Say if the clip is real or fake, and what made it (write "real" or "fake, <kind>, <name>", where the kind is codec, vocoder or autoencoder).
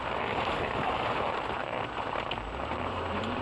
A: fake, vocoder, BigVGAN v2